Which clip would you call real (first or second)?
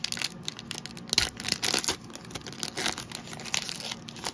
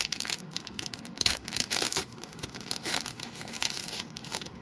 first